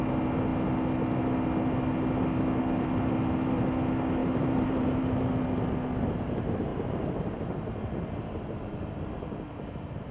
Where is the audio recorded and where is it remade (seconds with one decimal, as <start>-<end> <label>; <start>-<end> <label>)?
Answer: 0.0-4.2 recorded; 4.2-5.3 remade; 5.3-6.7 recorded; 6.7-10.1 remade